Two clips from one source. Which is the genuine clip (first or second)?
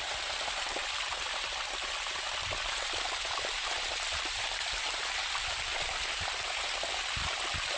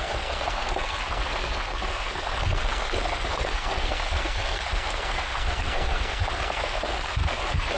first